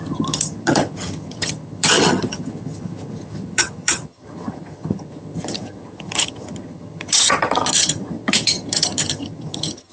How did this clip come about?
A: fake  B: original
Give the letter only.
A